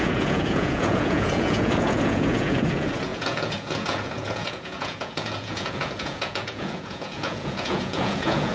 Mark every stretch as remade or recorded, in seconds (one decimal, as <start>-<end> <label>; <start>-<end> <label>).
0.0-8.5 remade